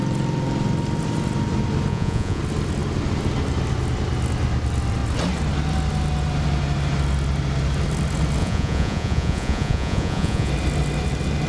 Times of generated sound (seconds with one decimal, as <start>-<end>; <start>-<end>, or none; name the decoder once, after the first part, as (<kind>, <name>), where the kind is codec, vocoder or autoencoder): 1.9-2.4 (vocoder, Vocos); 8.4-10.5